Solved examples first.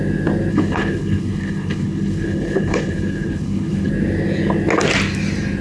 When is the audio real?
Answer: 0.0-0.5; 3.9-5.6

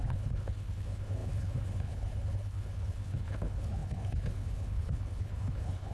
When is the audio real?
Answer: none